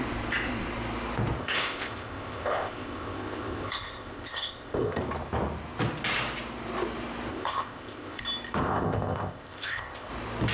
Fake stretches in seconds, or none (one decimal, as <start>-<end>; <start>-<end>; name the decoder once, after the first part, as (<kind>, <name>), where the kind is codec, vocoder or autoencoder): 1.4-5.0 (codec, ZipCodec); 7.3-8.2; 8.6-10.1